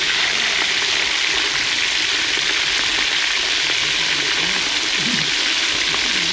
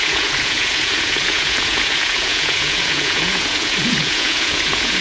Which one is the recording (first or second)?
first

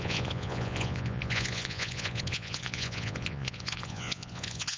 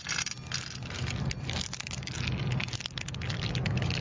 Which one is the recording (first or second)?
second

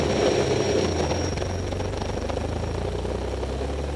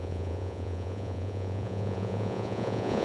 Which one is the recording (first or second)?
first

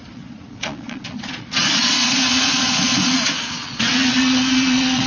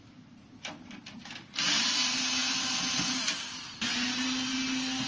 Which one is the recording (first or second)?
second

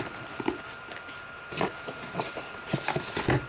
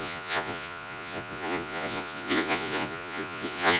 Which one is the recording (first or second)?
first